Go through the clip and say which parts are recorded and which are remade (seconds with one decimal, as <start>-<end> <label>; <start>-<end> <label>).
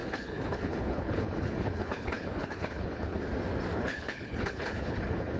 0.0-3.2 remade; 3.2-3.7 recorded; 3.7-5.4 remade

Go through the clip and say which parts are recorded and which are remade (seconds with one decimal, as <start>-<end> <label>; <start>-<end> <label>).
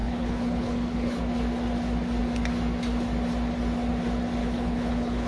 0.0-1.2 remade; 1.2-4.4 recorded; 4.4-5.3 remade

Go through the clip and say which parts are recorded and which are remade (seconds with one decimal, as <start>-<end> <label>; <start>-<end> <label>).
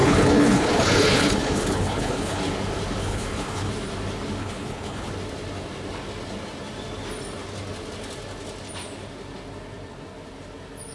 0.0-2.4 remade; 2.4-3.0 recorded; 3.0-3.7 remade; 3.7-4.4 recorded; 4.4-5.1 remade; 5.1-10.9 recorded